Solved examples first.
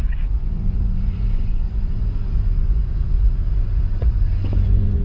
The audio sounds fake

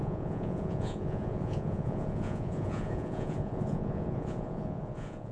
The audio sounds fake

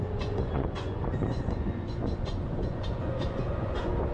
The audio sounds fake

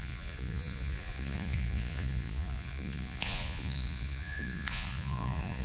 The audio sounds fake